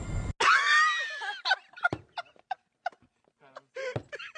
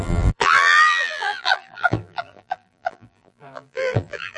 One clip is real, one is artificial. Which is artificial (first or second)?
second